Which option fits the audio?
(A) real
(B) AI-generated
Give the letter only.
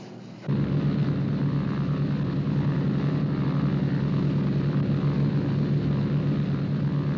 A